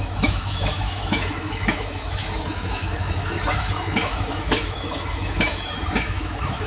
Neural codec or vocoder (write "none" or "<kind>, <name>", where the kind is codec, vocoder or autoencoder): autoencoder, DAC-VAE